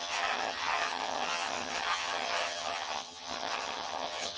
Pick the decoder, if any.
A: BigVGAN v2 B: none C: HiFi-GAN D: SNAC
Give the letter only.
C